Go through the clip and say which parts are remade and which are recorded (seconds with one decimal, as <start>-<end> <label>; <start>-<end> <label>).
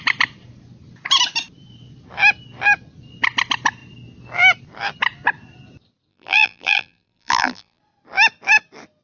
0.0-6.1 recorded; 6.1-7.8 remade; 7.8-9.0 recorded